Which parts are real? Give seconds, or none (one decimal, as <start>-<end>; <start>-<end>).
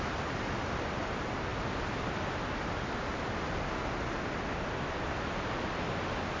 0.0-6.4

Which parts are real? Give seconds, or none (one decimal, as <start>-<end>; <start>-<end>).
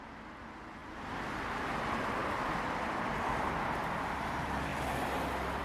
0.0-0.8; 1.7-5.6